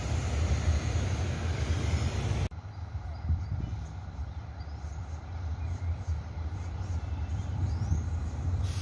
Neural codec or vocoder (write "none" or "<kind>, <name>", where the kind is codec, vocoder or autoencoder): none